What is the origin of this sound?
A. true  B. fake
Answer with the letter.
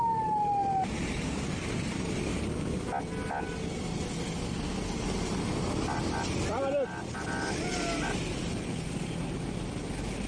A